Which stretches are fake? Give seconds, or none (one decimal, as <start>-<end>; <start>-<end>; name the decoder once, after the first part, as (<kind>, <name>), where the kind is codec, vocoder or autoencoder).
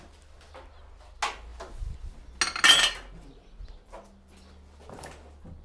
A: none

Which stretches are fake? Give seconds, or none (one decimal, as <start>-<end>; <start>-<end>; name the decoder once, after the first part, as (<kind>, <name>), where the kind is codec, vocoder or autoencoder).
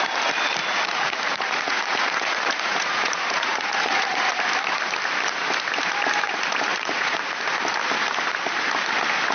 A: 0.6-4.3 (vocoder, Vocos); 6.7-7.6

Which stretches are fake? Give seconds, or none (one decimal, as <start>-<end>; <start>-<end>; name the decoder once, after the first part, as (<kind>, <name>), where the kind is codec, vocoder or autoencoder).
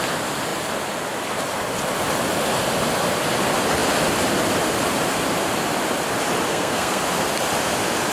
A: 6.5-7.0 (codec, SNAC)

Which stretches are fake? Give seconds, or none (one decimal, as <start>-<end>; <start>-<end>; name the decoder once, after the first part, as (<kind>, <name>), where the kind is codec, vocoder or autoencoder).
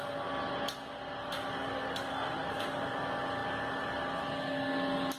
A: none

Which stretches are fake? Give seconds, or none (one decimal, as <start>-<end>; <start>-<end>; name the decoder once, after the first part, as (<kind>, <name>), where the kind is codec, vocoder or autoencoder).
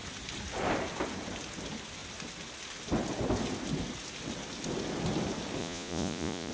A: 5.6-6.5 (vocoder, Vocos)